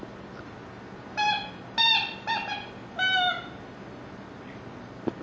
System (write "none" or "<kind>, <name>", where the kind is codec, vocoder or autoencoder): none